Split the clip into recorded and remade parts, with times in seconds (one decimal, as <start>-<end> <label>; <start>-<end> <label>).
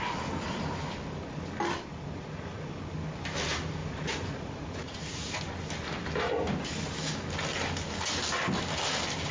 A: 0.0-1.9 recorded; 1.9-2.7 remade; 2.7-3.8 recorded; 3.8-5.4 remade; 5.4-9.3 recorded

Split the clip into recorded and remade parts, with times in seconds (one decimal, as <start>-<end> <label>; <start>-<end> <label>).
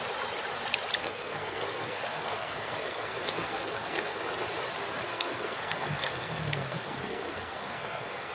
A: 0.0-1.0 recorded; 1.0-4.2 remade; 4.2-5.1 recorded; 5.1-8.3 remade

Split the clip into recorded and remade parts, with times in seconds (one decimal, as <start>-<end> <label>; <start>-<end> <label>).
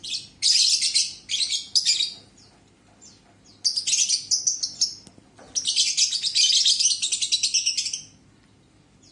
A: 0.0-9.1 recorded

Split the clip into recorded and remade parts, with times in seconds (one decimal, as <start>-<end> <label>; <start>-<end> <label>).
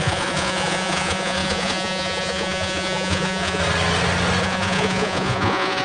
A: 0.0-3.6 remade; 3.6-4.4 recorded; 4.4-5.8 remade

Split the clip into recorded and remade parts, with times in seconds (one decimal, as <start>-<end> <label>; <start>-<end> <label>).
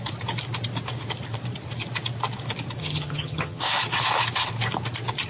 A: 0.0-2.8 recorded; 2.8-3.6 remade; 3.6-5.3 recorded